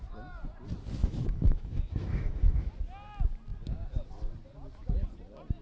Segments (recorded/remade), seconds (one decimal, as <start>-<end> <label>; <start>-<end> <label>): 0.0-1.0 recorded; 1.0-2.7 remade; 2.7-5.6 recorded